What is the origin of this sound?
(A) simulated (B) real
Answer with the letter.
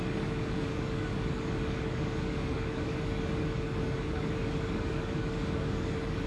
A